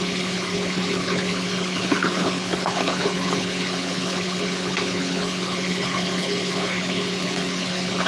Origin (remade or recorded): remade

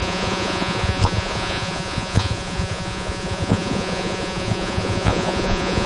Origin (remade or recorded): remade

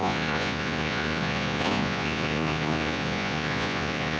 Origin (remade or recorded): remade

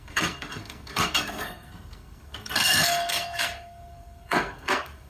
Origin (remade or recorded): remade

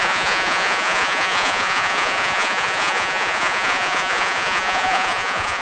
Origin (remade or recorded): remade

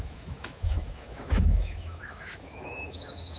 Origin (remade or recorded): remade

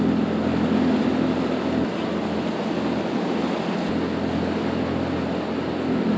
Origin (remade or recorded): recorded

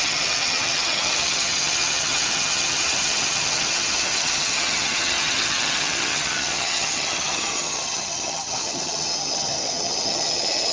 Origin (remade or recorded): remade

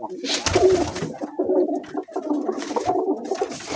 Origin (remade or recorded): recorded